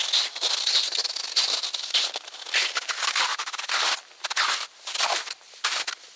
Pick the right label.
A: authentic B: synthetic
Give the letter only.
A